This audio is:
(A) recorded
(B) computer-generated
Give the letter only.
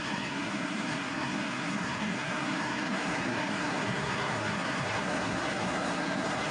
B